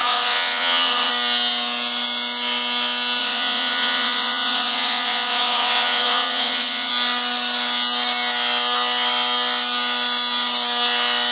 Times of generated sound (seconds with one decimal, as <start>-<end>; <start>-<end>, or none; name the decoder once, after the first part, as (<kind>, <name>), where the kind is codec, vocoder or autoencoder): 0.0-1.1 (vocoder, WaveNeXt); 3.2-6.9